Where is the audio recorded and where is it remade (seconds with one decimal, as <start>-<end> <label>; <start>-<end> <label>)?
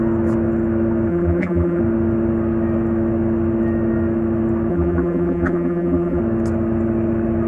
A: 0.0-1.1 recorded; 1.1-1.8 remade; 1.8-4.7 recorded; 4.7-6.2 remade; 6.2-7.5 recorded